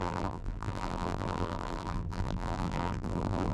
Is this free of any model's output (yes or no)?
no